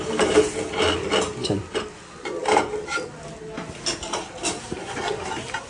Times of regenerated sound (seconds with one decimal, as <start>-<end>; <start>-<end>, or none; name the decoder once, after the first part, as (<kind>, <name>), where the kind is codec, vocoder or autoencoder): none